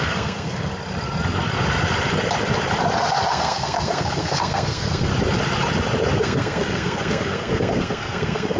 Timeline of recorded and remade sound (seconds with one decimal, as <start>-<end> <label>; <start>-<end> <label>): 0.0-0.7 remade; 0.7-3.3 recorded; 3.3-5.1 remade; 5.1-6.2 recorded; 6.2-8.6 remade